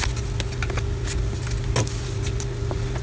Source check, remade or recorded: recorded